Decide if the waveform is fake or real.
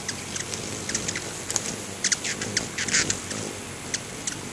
real